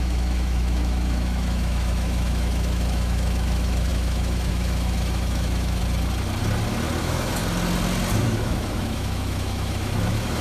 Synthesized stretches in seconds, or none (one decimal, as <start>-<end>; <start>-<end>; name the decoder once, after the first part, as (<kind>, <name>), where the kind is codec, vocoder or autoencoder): 0.0-5.8 (autoencoder, DAC-VAE); 7.0-7.4; 8.2-10.4